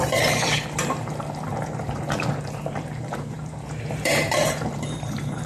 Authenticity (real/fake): fake